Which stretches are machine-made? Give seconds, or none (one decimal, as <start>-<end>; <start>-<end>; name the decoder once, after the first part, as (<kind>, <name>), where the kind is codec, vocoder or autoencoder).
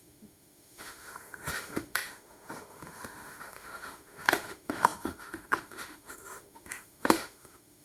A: 0.0-7.8 (autoencoder, DAC-VAE)